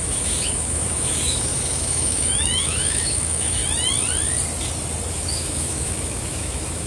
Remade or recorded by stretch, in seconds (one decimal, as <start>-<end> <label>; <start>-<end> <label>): 0.0-3.6 remade; 3.6-5.1 recorded; 5.1-6.9 remade